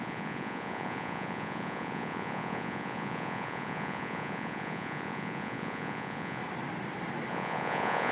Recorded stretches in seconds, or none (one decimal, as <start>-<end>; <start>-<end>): 6.4-7.3